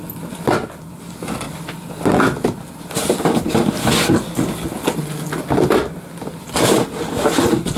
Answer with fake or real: real